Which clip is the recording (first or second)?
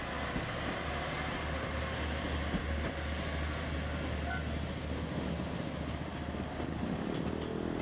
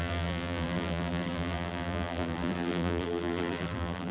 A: first